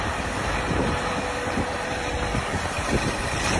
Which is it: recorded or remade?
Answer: remade